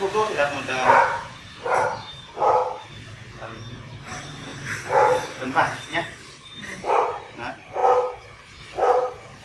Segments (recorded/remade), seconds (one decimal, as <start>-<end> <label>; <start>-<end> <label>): 0.0-2.6 remade; 2.6-3.7 recorded; 3.7-7.8 remade; 7.8-8.4 recorded; 8.4-9.4 remade